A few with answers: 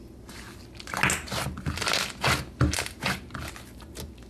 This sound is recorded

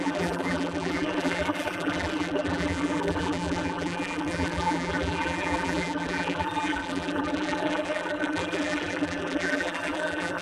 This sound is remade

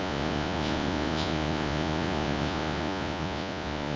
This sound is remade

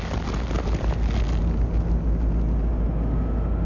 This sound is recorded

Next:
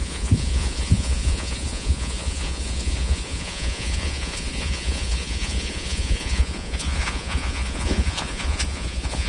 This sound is remade